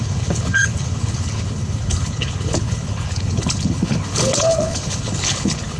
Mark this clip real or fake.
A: fake